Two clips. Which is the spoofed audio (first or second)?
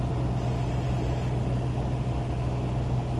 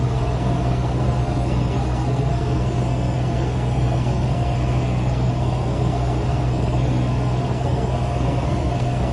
second